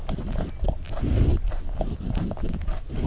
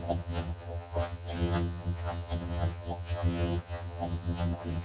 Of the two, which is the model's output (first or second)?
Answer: second